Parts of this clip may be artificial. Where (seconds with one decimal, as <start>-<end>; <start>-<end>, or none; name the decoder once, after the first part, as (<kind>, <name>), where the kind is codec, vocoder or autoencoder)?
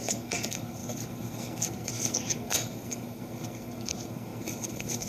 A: 0.0-5.1 (codec, SNAC)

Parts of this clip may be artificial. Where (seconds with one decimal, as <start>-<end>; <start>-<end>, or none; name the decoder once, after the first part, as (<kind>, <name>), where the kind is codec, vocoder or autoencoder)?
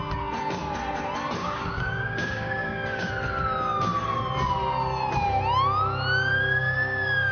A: 1.4-3.1 (codec, DAC); 6.3-7.3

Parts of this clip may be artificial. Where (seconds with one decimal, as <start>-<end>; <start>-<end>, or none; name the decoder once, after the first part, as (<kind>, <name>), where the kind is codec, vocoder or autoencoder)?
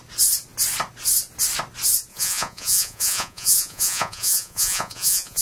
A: 2.1-5.4 (vocoder, Vocos)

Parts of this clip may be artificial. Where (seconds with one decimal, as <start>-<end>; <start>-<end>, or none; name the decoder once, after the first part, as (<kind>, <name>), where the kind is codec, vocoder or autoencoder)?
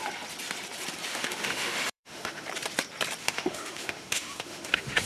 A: 1.1-2.5 (autoencoder, DAC-VAE); 3.2-5.1